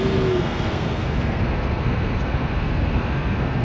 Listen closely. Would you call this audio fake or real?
fake